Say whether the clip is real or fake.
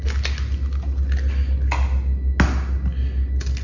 real